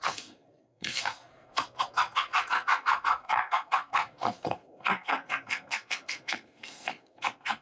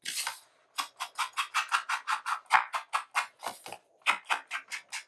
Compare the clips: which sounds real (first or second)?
second